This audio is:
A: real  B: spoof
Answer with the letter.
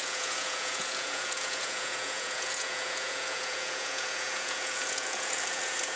B